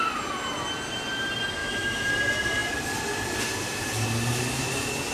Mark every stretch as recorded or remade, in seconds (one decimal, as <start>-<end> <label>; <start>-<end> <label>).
0.0-1.6 recorded; 1.6-2.1 remade; 2.1-5.1 recorded